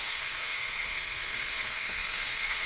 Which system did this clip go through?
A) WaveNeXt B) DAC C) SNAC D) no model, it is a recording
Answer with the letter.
C